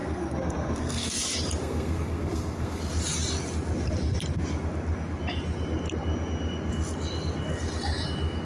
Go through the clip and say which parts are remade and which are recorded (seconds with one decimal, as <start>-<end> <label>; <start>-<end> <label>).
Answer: 0.0-1.2 remade; 1.2-1.6 recorded; 1.6-2.8 remade; 2.8-8.4 recorded